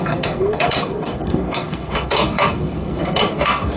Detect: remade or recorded remade